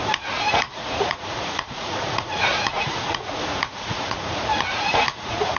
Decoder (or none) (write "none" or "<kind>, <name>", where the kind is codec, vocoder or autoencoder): vocoder, Vocos